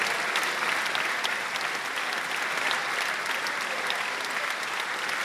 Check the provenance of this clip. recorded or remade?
recorded